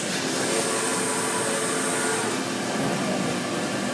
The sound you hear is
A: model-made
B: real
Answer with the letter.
B